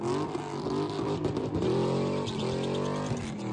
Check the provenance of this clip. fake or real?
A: real